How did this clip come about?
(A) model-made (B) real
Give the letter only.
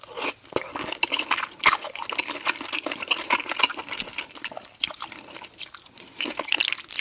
B